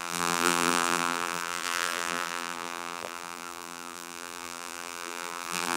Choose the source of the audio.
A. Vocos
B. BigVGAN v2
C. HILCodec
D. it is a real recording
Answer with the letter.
B